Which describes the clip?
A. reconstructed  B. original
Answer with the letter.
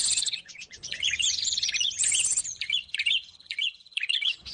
A